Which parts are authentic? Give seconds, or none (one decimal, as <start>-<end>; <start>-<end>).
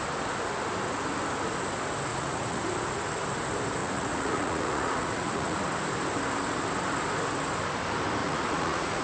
0.0-2.1; 2.6-3.8; 5.6-8.2